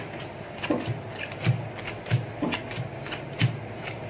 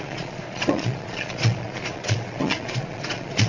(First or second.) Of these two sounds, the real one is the first